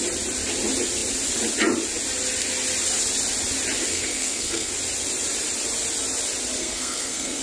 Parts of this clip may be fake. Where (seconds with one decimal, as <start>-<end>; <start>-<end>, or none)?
3.9-4.7; 6.6-7.4